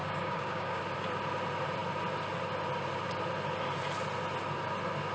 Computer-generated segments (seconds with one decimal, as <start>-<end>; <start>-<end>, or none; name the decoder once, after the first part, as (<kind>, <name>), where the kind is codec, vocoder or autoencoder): 0.0-0.8 (codec, DAC)